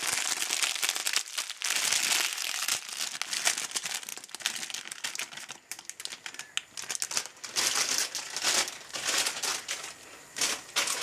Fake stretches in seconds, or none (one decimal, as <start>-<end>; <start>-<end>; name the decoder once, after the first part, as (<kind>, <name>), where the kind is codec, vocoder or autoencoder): none